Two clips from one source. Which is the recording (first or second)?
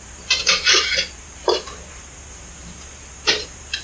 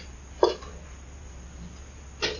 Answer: second